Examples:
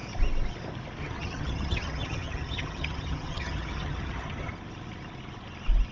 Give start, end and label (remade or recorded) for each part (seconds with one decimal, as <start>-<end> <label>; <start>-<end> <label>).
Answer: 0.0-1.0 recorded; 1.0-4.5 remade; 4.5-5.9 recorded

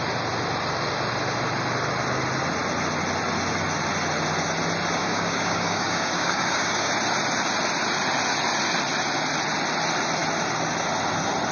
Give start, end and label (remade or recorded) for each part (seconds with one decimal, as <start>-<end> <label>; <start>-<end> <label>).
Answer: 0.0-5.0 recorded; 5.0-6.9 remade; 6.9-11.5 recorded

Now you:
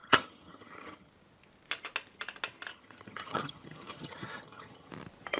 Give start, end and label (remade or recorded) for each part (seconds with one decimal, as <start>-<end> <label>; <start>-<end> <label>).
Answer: 0.0-1.1 remade; 1.1-2.7 recorded; 2.7-4.9 remade; 4.9-5.4 recorded